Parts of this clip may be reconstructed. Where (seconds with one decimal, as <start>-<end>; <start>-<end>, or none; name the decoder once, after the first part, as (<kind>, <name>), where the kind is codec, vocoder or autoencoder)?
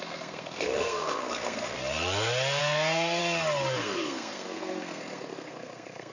0.0-1.8 (codec, SNAC); 2.6-3.2; 3.8-6.1